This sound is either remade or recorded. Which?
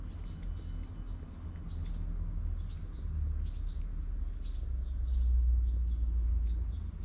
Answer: recorded